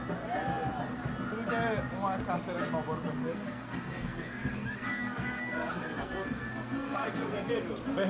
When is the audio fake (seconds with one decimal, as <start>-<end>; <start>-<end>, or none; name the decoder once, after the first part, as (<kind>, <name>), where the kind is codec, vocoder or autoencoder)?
3.2-7.5 (codec, SNAC)